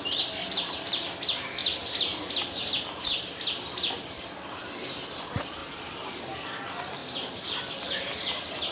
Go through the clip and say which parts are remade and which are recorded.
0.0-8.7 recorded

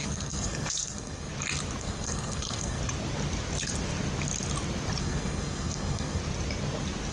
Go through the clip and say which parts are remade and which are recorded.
0.0-1.3 remade; 1.3-1.8 recorded; 1.8-2.8 remade; 2.8-5.0 recorded; 5.0-6.2 remade; 6.2-7.1 recorded

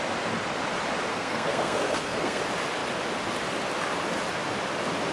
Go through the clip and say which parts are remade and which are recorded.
0.0-1.1 recorded; 1.1-2.4 remade; 2.4-5.1 recorded

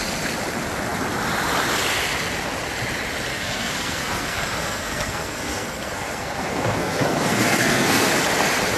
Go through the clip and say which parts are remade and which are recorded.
0.0-3.3 recorded; 3.3-8.1 remade; 8.1-8.8 recorded